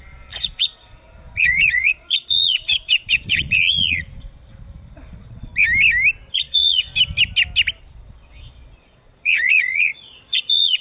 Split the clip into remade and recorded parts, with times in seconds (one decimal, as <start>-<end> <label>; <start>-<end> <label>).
0.0-5.5 remade; 5.5-6.3 recorded; 6.3-6.9 remade; 6.9-7.8 recorded; 7.8-10.8 remade